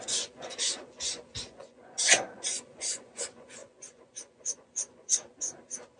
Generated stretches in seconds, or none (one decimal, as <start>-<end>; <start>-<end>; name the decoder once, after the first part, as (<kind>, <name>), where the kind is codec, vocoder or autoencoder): 0.0-5.1 (vocoder, Vocos)